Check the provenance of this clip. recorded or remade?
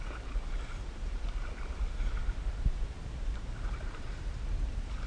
remade